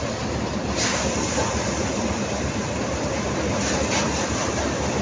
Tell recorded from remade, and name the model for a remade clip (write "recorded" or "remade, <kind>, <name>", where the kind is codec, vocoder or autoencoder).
recorded